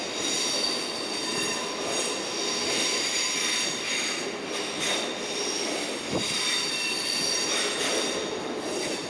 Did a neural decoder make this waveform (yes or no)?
no